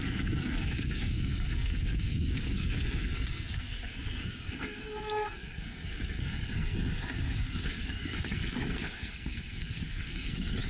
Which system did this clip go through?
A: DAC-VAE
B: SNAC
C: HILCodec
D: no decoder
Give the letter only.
B